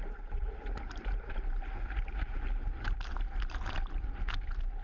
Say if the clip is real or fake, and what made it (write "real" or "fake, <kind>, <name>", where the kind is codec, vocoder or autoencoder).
fake, vocoder, BigVGAN v2